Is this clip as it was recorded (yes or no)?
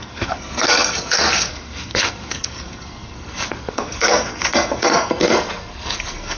no